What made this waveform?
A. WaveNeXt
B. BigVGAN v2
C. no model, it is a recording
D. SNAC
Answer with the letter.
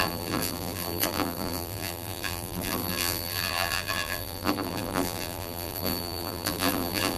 B